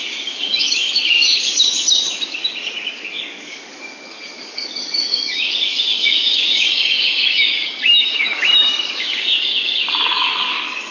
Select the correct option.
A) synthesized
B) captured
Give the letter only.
A